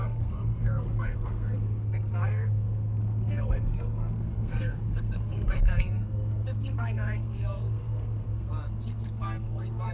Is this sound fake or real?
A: fake